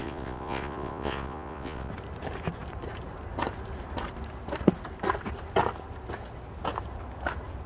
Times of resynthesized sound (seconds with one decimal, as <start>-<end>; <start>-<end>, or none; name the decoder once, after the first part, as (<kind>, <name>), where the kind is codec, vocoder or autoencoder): 0.0-1.9 (vocoder, Vocos)